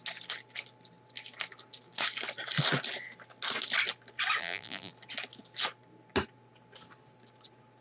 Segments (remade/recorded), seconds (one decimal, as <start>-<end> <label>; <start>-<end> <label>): 0.0-4.4 recorded; 4.4-4.9 remade; 4.9-7.8 recorded